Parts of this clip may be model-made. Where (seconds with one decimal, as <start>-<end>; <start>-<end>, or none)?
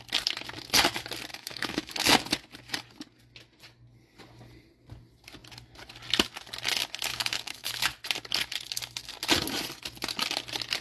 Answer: 1.3-1.9; 7.1-7.7